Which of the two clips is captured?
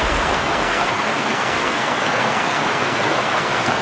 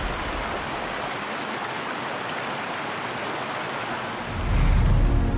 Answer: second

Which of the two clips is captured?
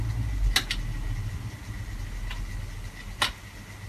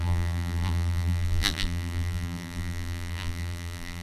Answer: first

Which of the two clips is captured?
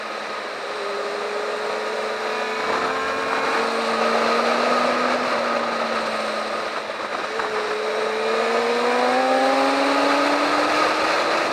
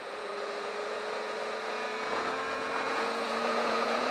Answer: first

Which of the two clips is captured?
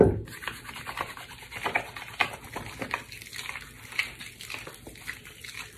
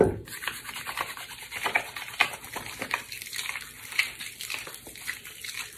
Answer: first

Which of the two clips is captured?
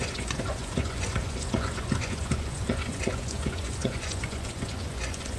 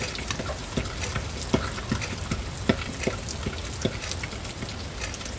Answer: second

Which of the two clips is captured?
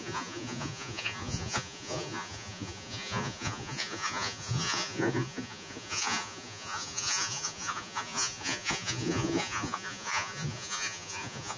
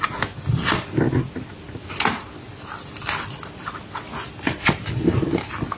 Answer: second